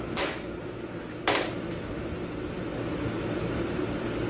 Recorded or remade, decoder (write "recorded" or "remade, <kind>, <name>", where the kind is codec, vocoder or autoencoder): recorded